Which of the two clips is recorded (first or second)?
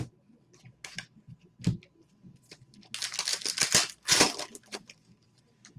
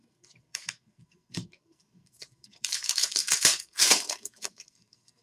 first